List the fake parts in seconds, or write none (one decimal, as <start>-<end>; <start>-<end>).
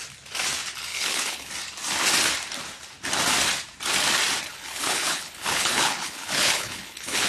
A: 0.9-1.5; 4.5-7.3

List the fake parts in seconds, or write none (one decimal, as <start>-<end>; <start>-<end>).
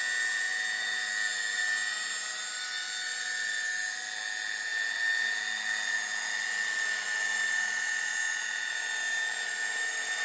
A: none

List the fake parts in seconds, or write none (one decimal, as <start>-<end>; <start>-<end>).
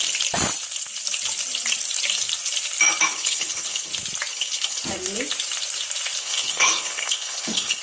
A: 3.1-3.9; 4.3-4.8; 6.2-7.8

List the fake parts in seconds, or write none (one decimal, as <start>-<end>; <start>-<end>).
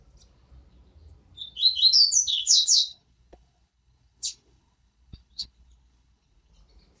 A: 2.3-6.5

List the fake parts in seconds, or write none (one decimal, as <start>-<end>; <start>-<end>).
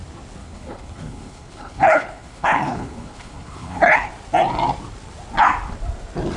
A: 0.4-4.1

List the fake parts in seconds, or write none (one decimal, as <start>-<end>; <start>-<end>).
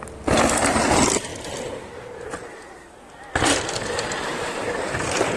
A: none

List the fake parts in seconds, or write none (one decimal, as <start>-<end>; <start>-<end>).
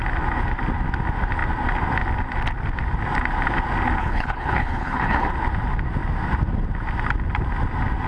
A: 4.0-5.3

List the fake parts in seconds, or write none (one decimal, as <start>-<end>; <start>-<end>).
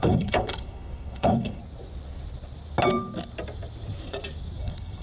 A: 0.0-1.6; 4.6-5.0